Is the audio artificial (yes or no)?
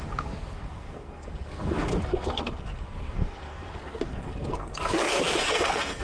yes